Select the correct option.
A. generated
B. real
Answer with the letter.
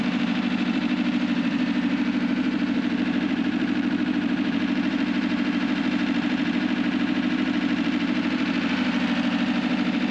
A